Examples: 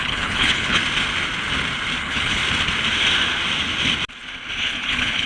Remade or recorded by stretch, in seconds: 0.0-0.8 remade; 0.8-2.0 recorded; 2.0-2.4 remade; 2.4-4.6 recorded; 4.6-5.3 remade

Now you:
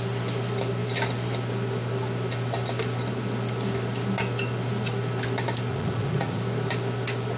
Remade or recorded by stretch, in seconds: 0.0-5.7 recorded; 5.7-6.4 remade; 6.4-7.4 recorded

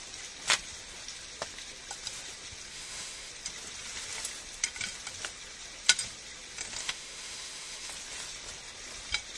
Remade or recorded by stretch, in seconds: 0.0-2.7 recorded; 2.7-3.3 remade; 3.3-6.8 recorded; 6.8-7.9 remade; 7.9-9.4 recorded

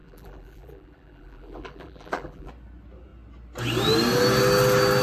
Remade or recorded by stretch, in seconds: 0.0-2.5 remade; 2.5-5.0 recorded

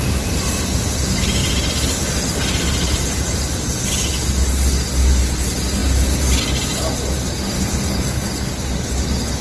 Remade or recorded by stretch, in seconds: 0.0-9.4 recorded